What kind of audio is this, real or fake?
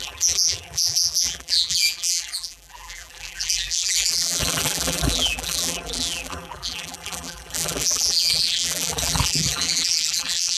fake